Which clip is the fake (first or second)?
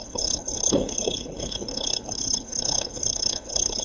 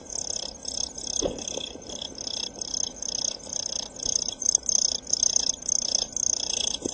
first